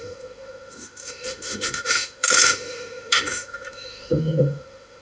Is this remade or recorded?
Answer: remade